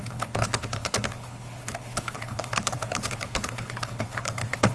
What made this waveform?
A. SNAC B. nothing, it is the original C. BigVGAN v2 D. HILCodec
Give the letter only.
D